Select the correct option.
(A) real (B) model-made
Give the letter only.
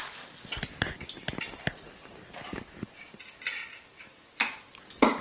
A